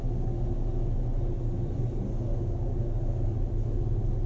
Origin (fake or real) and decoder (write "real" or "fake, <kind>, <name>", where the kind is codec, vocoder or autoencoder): real